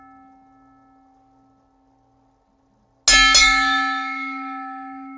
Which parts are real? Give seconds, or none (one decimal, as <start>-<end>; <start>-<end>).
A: 0.0-3.4